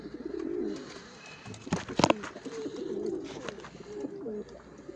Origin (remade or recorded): recorded